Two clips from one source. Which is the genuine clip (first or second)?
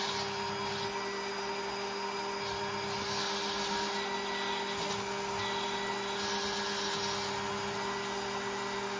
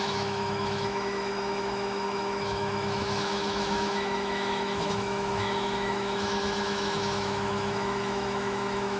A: first